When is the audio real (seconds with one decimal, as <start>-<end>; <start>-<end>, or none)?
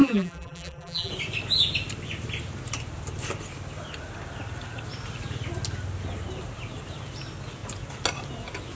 1.1-8.8